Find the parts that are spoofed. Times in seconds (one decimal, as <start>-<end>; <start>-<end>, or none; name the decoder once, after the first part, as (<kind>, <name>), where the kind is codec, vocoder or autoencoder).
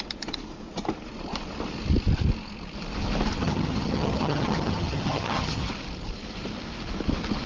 3.4-5.7 (vocoder, HiFi-GAN)